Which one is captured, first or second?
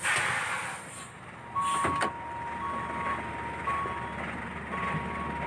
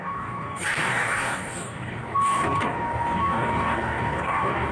first